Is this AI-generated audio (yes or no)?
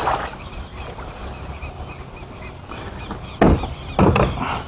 no